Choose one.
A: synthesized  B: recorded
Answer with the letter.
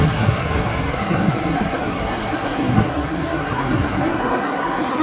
A